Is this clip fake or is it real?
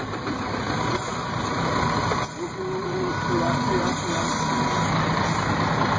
fake